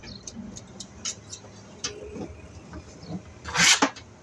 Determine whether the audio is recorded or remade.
recorded